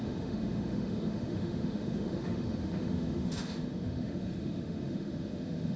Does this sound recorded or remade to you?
remade